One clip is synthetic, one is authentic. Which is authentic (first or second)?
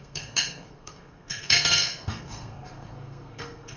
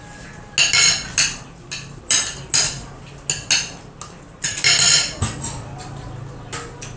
second